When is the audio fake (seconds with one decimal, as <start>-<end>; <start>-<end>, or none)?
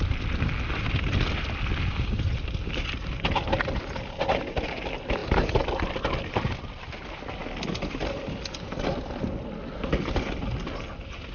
none